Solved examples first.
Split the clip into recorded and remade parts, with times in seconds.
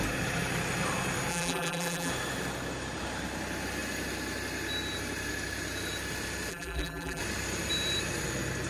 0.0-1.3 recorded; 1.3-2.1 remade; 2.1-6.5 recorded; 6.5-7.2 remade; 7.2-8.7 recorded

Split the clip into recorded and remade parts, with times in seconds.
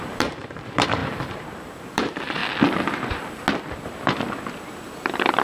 0.0-2.4 remade; 2.4-5.4 recorded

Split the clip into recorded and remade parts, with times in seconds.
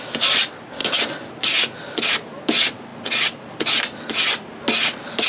0.0-5.3 recorded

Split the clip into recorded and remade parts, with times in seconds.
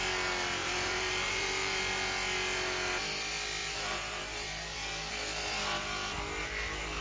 0.0-0.6 recorded; 0.6-1.8 remade; 1.8-3.6 recorded; 3.6-5.1 remade; 5.1-7.0 recorded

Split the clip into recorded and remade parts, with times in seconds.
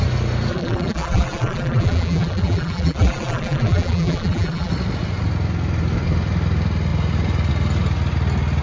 0.0-0.5 recorded; 0.5-4.7 remade; 4.7-8.6 recorded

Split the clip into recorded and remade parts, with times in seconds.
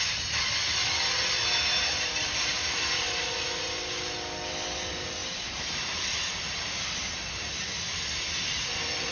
0.0-1.4 recorded; 1.4-3.0 remade; 3.0-5.2 recorded; 5.2-6.3 remade; 6.3-9.1 recorded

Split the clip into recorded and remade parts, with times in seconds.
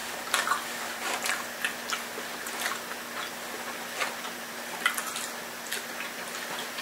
0.0-4.0 recorded; 4.0-4.5 remade; 4.5-6.8 recorded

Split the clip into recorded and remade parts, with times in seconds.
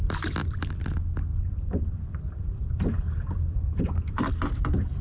0.0-1.3 recorded; 1.3-4.3 remade; 4.3-5.0 recorded